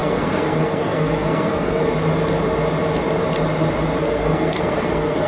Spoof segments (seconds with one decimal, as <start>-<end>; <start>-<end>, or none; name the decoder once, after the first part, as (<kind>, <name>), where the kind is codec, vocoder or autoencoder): 0.0-1.8 (codec, SNAC); 4.0-5.3